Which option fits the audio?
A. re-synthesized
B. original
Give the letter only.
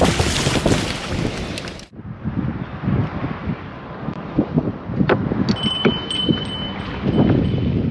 B